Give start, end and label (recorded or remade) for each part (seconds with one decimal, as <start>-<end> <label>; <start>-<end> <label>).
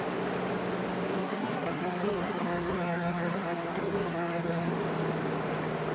0.0-1.2 recorded; 1.2-4.7 remade; 4.7-5.9 recorded